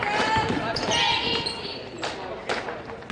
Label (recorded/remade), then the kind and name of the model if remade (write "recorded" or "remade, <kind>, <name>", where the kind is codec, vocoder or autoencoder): recorded